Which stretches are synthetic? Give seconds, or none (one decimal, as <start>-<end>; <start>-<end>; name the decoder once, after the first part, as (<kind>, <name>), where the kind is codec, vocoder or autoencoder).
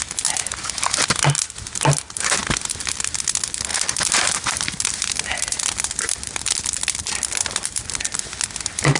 none